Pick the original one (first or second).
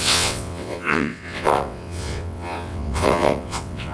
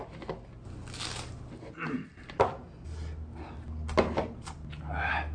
second